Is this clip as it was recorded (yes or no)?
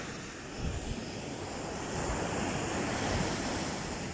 yes